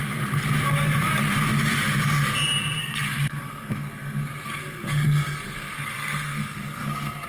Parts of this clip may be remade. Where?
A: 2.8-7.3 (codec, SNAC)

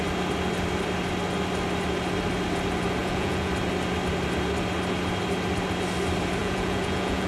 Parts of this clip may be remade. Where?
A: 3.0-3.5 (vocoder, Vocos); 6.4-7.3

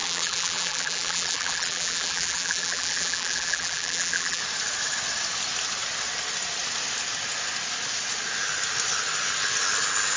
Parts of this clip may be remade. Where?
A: 0.0-4.4 (vocoder, BigVGAN v2)

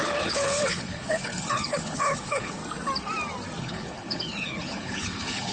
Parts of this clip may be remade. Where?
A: 0.0-2.6 (codec, HILCodec); 3.6-5.5

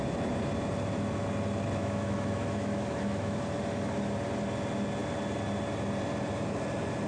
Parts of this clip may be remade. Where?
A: 1.8-3.4 (autoencoder, DAC-VAE)

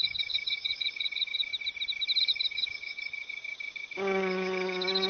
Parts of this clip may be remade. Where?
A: 0.0-1.5 (codec, DAC); 2.2-5.1